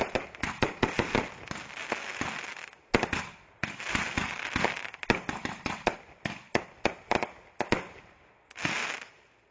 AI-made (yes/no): no